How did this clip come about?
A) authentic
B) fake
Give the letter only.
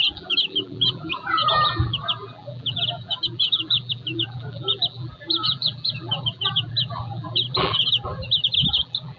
B